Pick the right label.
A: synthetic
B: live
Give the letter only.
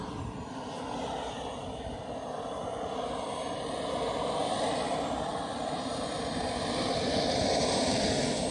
B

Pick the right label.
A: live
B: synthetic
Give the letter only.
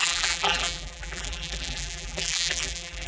B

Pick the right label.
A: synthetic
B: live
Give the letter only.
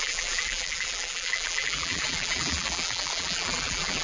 A